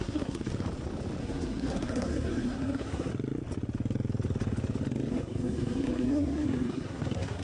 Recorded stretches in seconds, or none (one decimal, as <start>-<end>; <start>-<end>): 0.5-1.2; 3.1-5.1

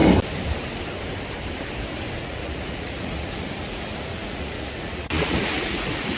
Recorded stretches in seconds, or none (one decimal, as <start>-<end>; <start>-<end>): 0.0-2.2

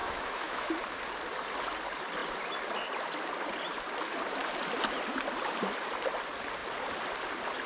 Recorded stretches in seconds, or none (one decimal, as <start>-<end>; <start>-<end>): 0.7-7.7